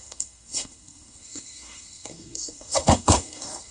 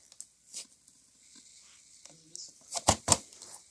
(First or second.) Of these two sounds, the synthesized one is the first